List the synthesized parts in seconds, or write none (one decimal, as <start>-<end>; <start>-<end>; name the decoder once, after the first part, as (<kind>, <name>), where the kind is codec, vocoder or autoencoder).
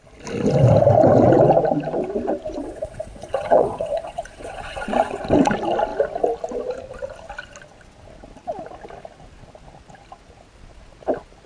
2.6-5.2 (vocoder, WaveNeXt)